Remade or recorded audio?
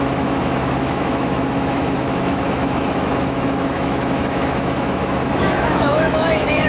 remade